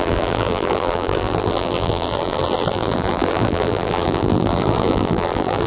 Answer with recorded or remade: remade